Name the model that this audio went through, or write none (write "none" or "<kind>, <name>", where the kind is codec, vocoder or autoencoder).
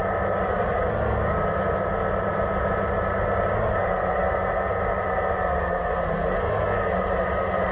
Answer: none